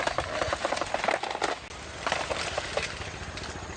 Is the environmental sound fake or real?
real